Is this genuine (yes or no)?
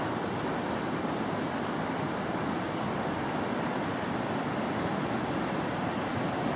yes